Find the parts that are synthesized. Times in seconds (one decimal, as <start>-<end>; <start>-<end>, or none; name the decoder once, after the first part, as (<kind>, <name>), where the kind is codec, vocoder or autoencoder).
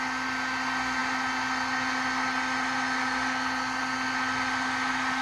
none